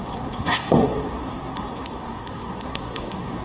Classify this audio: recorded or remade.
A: remade